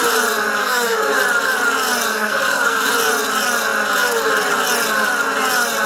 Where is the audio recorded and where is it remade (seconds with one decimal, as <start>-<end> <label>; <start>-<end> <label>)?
0.0-0.6 recorded; 0.6-1.2 remade; 1.2-2.1 recorded; 2.1-2.9 remade; 2.9-5.9 recorded